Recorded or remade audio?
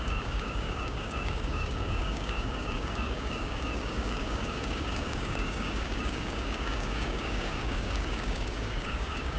remade